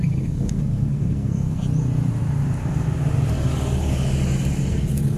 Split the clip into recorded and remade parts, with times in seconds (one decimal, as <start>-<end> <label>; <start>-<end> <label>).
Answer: 0.0-1.6 remade; 1.6-4.7 recorded; 4.7-5.2 remade